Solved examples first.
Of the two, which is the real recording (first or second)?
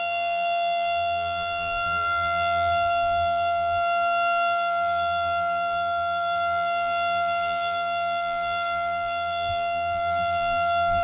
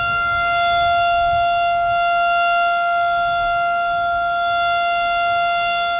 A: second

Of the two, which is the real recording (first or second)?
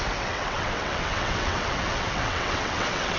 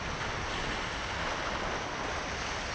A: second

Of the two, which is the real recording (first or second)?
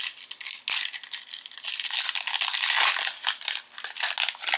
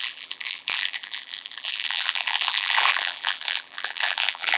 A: first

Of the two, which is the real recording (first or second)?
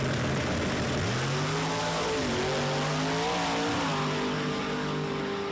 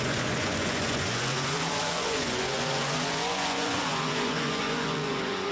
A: first